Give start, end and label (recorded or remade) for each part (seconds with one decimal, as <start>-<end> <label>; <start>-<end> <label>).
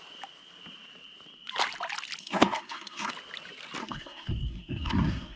0.0-2.2 recorded; 2.2-3.1 remade; 3.1-3.8 recorded; 3.8-5.4 remade